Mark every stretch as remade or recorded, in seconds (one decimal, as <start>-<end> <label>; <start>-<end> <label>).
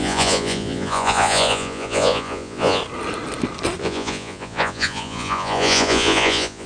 0.0-2.8 remade; 2.8-3.8 recorded; 3.8-6.7 remade